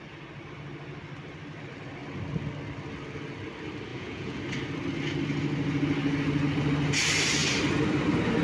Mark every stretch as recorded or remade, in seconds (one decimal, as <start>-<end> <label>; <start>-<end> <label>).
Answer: 0.0-3.9 recorded; 3.9-4.4 remade; 4.4-8.4 recorded